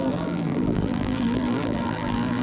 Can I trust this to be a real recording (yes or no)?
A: no